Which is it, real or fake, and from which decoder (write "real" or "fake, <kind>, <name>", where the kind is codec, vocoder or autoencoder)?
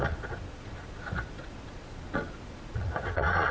fake, vocoder, Vocos